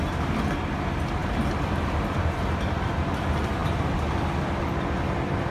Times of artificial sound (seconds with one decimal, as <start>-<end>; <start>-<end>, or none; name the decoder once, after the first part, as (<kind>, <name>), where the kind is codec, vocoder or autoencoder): none